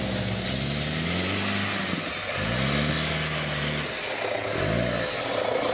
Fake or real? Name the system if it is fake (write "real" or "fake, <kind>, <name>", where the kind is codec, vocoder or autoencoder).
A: real